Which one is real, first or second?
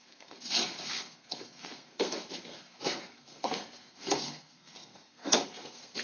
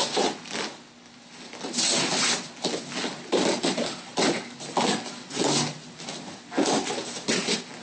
second